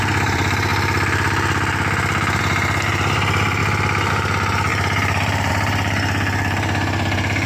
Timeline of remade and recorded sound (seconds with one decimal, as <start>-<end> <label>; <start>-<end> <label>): 0.0-0.7 remade; 0.7-2.4 recorded; 2.4-3.6 remade; 3.6-4.1 recorded; 4.1-7.5 remade